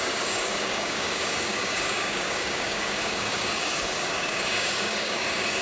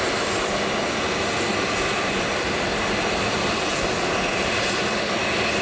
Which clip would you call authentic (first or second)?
second